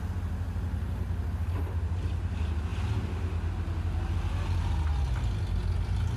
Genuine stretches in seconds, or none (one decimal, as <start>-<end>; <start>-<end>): 0.0-6.2